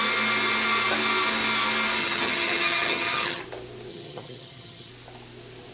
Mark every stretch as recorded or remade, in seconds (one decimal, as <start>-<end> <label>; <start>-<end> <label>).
0.0-2.0 recorded; 2.0-3.4 remade; 3.4-3.9 recorded; 3.9-4.9 remade; 4.9-5.7 recorded